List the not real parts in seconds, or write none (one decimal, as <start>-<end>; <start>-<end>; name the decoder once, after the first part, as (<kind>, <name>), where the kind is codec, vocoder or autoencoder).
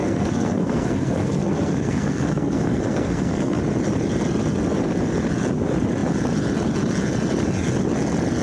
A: 0.0-3.6 (codec, SNAC)